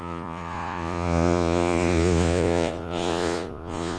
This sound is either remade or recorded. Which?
remade